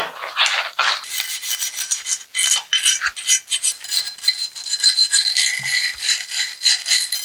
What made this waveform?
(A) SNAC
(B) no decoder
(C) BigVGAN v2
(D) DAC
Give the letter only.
B